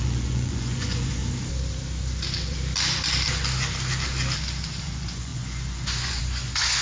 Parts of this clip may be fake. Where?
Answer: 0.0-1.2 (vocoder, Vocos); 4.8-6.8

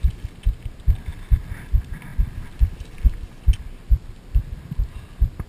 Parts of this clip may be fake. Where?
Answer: none

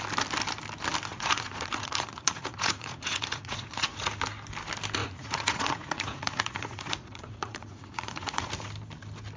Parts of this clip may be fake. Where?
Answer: 1.1-4.1 (vocoder, Vocos); 5.0-8.5

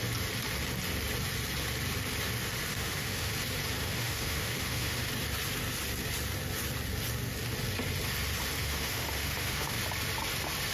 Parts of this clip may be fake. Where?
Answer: 2.7-3.3 (autoencoder, DAC-VAE); 3.8-5.1; 8.6-9.8

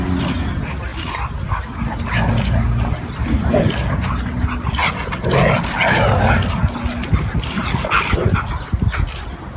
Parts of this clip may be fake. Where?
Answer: none

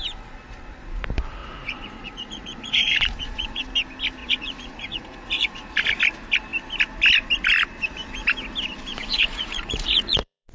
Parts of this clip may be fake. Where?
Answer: 1.4-3.6 (vocoder, Vocos); 4.2-5.7; 8.9-10.5

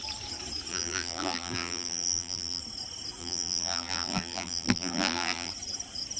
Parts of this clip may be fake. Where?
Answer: 0.7-2.6 (vocoder, BigVGAN v2); 3.2-5.5